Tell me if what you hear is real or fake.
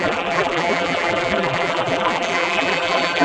fake